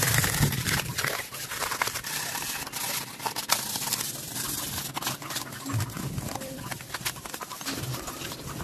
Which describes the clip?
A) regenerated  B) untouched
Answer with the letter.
A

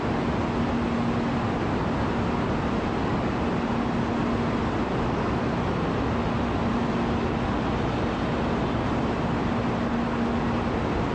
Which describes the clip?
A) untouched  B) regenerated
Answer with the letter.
A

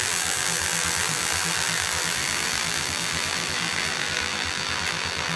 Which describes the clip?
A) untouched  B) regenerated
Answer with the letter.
B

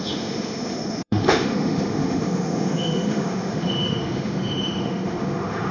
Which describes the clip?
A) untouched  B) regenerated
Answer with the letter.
B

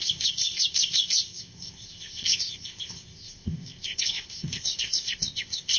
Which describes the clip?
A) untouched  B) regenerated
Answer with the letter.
B